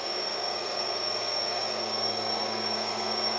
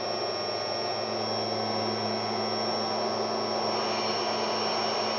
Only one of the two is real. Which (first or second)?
second